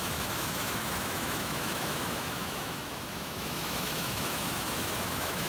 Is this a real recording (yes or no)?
no